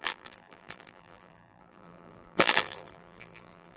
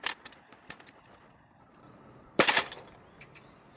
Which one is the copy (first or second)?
first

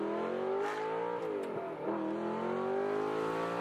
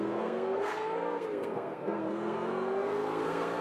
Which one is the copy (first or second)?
second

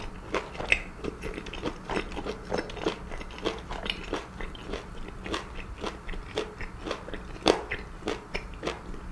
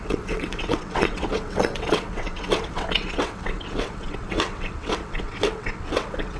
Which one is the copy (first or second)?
second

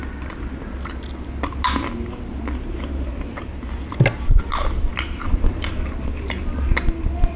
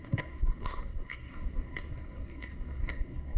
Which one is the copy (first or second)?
second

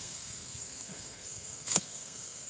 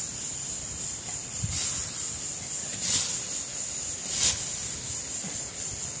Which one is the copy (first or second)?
first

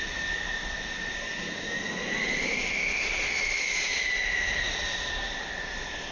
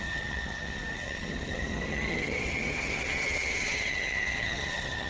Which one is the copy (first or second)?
second